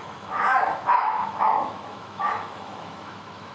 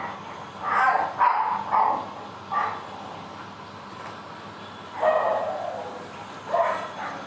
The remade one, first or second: first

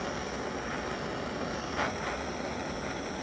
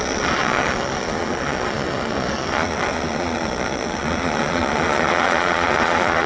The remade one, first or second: second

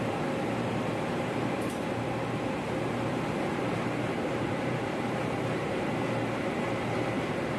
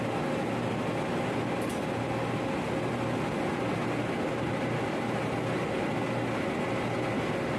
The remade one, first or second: first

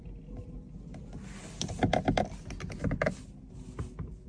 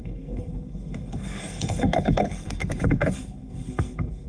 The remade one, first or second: second